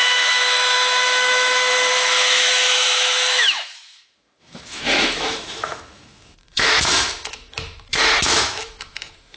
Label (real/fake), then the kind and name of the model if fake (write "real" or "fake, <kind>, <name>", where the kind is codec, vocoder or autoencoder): fake, autoencoder, DAC-VAE